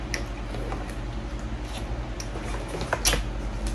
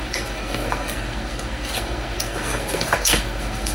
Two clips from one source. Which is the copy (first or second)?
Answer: second